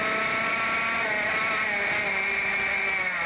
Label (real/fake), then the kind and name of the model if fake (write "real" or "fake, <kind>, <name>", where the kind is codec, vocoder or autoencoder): real